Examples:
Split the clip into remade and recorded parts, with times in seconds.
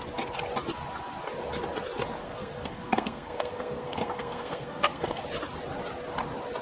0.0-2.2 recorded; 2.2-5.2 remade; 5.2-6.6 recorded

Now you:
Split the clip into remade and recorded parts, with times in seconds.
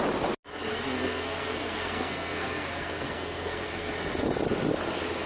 0.0-0.7 recorded; 0.7-3.9 remade; 3.9-5.3 recorded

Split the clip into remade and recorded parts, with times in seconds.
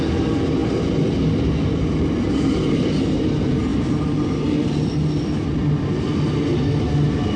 0.0-7.4 recorded